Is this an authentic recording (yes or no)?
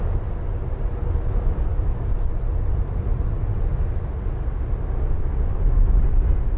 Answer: yes